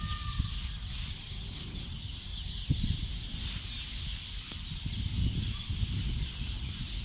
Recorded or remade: recorded